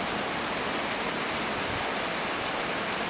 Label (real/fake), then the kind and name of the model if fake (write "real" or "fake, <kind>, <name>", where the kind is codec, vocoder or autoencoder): real